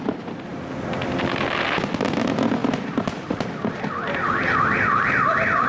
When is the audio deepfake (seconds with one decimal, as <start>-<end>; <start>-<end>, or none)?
0.5-1.1; 2.6-4.3